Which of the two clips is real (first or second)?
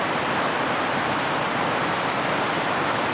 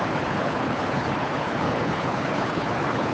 first